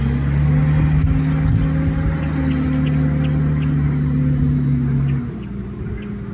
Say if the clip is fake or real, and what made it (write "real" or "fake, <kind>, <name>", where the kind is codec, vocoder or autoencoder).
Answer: real